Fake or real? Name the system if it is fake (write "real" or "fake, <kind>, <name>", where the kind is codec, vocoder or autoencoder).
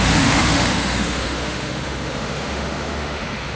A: fake, autoencoder, DAC-VAE